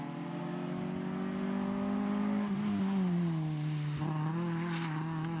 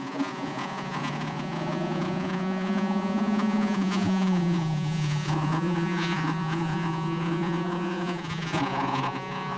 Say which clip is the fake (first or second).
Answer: second